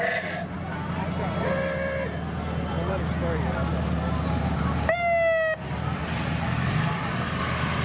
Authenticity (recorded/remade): recorded